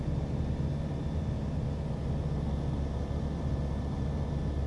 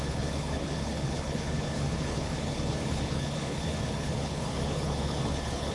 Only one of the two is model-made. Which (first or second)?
second